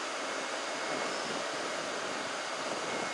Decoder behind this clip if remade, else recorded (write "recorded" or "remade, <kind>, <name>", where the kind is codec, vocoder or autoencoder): remade, vocoder, BigVGAN v2